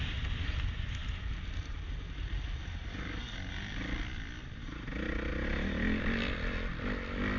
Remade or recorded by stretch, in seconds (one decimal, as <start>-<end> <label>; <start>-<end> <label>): 0.0-7.4 recorded

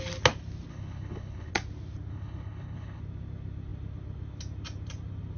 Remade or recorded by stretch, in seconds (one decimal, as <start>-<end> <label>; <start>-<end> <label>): 0.0-0.7 recorded; 0.7-1.5 remade; 1.5-2.1 recorded; 2.1-3.0 remade; 3.0-5.4 recorded

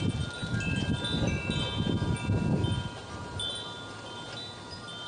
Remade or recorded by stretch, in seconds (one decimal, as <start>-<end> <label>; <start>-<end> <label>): 0.0-5.1 recorded

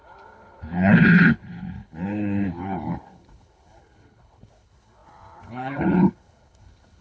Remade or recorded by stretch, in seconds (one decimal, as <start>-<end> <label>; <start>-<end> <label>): 0.0-7.0 remade

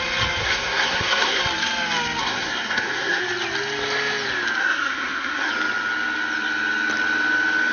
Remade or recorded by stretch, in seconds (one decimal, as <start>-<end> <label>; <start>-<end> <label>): 0.0-0.4 recorded; 0.4-1.4 remade; 1.4-2.2 recorded; 2.2-3.2 remade; 3.2-4.6 recorded; 4.6-5.5 remade; 5.5-7.7 recorded

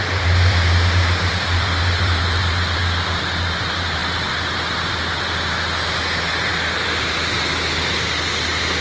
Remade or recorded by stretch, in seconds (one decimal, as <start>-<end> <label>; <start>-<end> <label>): 0.0-8.8 remade

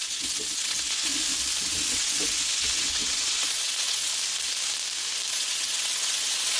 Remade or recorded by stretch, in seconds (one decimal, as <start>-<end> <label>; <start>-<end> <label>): 0.0-1.1 remade; 1.1-1.7 recorded; 1.7-4.1 remade; 4.1-5.3 recorded; 5.3-6.6 remade